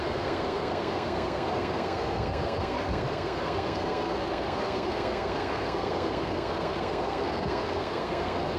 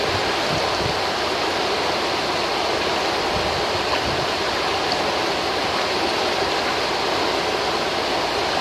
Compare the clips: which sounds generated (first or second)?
first